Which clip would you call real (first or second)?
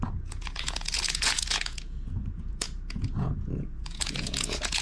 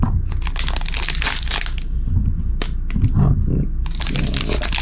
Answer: second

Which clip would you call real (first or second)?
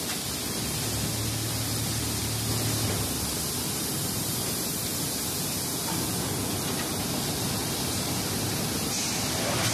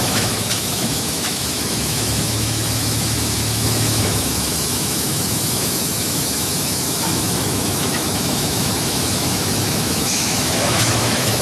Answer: first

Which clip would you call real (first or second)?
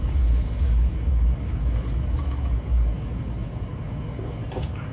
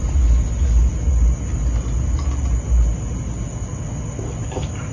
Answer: second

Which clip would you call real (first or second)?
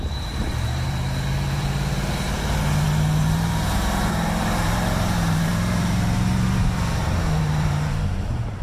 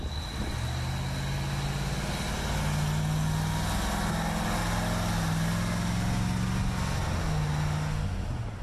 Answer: second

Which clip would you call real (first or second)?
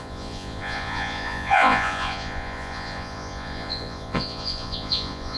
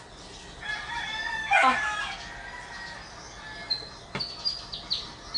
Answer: second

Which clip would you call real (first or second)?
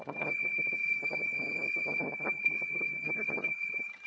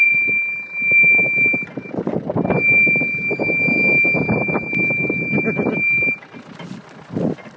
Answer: second